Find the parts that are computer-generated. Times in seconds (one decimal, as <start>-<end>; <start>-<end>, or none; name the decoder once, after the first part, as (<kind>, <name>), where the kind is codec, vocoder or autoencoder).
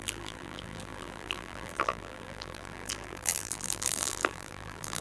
0.0-5.0 (vocoder, BigVGAN v2)